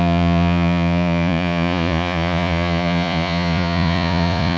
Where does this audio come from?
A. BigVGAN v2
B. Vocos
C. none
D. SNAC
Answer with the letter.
B